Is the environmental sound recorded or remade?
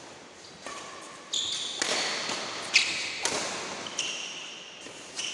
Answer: recorded